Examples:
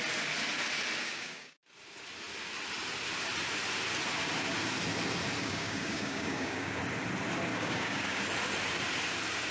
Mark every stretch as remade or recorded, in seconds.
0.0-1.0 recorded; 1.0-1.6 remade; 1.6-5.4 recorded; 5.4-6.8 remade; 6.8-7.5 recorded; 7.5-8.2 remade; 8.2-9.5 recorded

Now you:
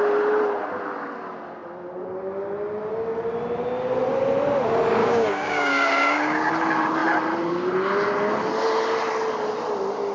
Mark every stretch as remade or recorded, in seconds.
0.0-5.0 recorded; 5.0-6.5 remade; 6.5-10.1 recorded

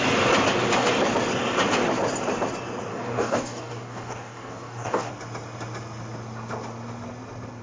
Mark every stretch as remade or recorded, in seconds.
0.0-2.9 recorded; 2.9-5.1 remade; 5.1-7.6 recorded

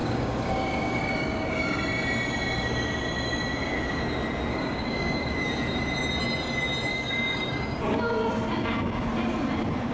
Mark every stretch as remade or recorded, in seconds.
0.0-1.8 remade; 1.8-4.5 recorded; 4.5-5.5 remade; 5.5-6.9 recorded; 6.9-8.3 remade; 8.3-9.9 recorded